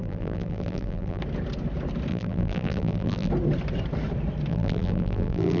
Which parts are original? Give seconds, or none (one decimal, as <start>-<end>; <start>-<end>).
1.2-2.1; 3.3-4.5